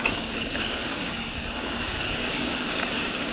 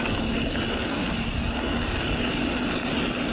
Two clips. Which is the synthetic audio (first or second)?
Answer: first